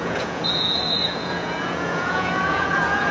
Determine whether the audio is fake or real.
fake